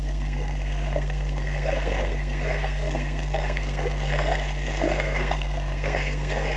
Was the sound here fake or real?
fake